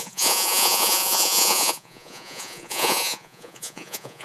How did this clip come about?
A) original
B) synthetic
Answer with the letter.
B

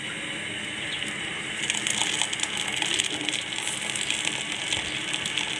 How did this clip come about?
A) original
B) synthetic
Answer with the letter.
A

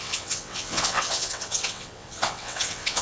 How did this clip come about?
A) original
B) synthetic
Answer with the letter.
B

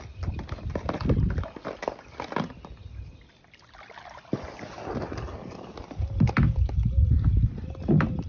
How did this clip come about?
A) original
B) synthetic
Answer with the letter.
A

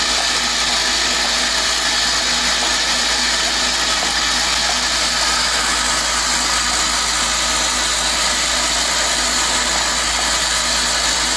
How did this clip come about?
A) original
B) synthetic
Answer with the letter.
A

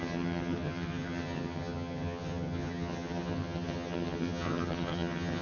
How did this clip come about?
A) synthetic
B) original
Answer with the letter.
A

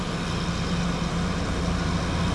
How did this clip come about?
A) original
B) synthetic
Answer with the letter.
A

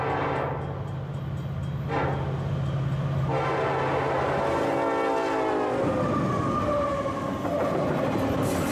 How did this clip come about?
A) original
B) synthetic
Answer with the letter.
A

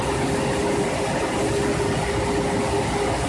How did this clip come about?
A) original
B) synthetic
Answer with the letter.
A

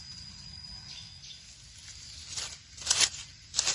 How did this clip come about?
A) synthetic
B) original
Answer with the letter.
B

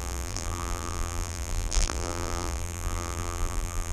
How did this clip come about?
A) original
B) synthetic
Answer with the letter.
B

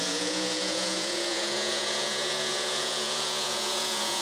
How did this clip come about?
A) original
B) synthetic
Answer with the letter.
B